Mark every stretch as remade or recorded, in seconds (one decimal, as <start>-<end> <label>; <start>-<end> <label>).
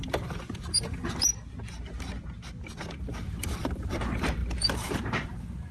0.0-1.3 remade; 1.3-3.0 recorded; 3.0-5.7 remade